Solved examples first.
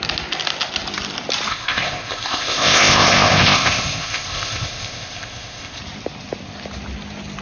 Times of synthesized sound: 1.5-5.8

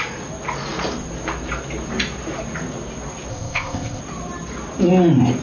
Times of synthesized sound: 3.3-4.0

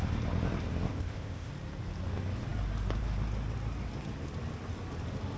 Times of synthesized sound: 0.9-1.5

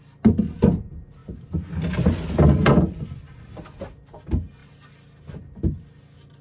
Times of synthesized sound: none

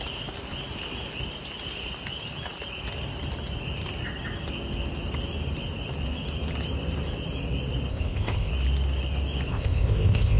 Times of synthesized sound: 7.9-8.5; 9.5-10.4